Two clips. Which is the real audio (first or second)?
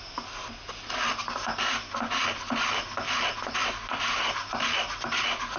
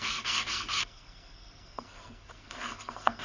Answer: first